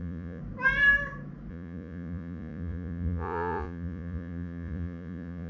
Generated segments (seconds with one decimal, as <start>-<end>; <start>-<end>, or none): 0.0-0.4; 1.5-5.5